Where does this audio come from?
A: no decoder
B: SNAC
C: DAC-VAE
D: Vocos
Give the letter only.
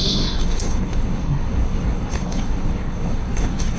B